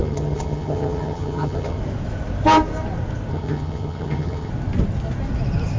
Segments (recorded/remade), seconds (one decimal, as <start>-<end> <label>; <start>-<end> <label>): 0.0-1.8 remade; 1.8-3.3 recorded; 3.3-4.5 remade; 4.5-5.8 recorded